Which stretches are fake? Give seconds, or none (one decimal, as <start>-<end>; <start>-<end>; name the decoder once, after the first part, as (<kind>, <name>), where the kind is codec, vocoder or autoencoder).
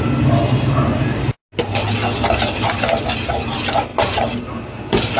3.9-4.5 (vocoder, BigVGAN v2)